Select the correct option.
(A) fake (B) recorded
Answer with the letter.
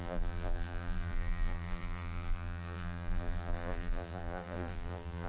A